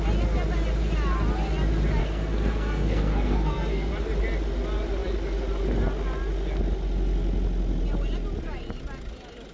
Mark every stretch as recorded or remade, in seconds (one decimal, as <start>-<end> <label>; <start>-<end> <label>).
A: 0.0-2.0 recorded; 2.0-3.9 remade; 3.9-9.5 recorded